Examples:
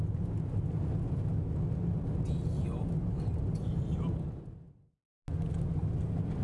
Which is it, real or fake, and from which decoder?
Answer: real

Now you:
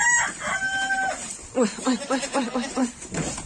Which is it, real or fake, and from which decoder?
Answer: fake, vocoder, BigVGAN v2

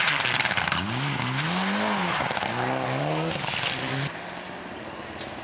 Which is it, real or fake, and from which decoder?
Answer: real